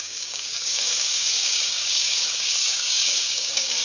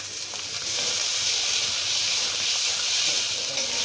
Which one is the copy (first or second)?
first